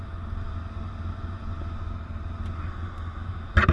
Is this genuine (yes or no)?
yes